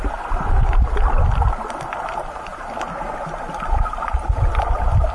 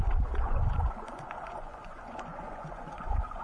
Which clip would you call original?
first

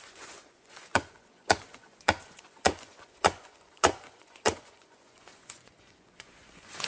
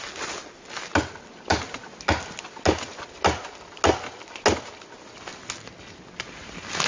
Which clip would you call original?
second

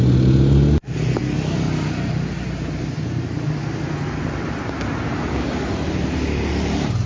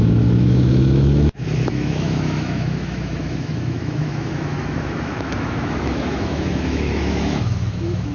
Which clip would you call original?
first